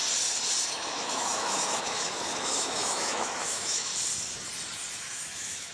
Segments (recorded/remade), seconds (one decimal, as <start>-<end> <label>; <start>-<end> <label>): 0.0-0.7 recorded; 0.7-3.9 remade; 3.9-5.0 recorded; 5.0-5.7 remade